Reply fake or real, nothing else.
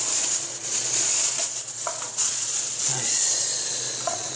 fake